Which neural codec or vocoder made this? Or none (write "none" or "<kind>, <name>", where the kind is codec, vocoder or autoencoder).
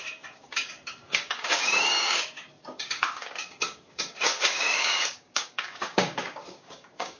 codec, DAC